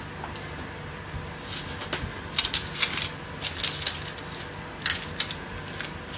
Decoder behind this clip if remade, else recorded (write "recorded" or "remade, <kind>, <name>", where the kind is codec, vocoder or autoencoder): recorded